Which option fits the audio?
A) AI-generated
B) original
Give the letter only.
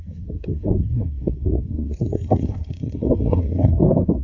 A